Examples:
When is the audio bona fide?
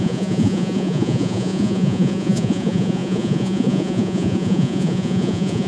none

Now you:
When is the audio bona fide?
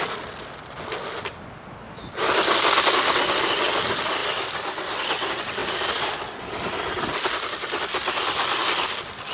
0.0-9.3